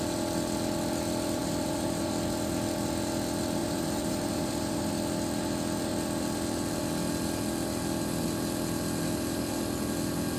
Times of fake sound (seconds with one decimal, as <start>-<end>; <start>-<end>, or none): 1.4-2.1; 3.6-4.9